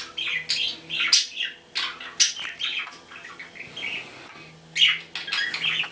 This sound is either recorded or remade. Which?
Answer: recorded